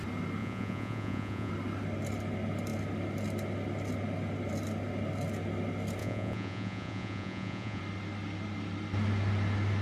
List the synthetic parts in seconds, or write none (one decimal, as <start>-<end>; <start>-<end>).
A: 0.4-1.5; 6.0-7.8